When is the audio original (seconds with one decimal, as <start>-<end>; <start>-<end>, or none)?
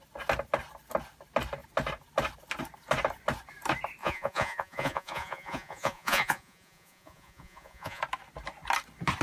0.0-4.0; 8.0-9.2